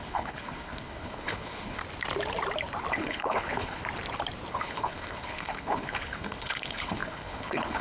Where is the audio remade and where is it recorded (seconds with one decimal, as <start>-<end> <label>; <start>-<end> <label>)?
0.0-1.8 remade; 1.8-2.9 recorded; 2.9-3.8 remade; 3.8-4.5 recorded; 4.5-7.8 remade